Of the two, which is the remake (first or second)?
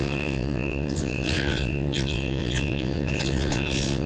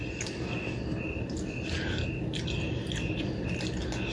first